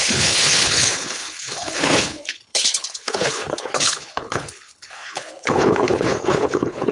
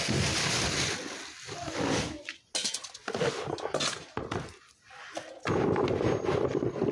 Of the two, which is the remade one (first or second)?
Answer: first